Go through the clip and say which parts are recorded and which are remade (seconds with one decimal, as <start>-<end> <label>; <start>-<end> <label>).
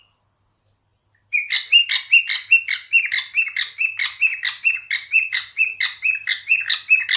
0.0-7.2 recorded